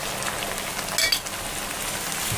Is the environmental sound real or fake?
real